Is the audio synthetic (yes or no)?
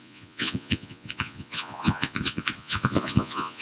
yes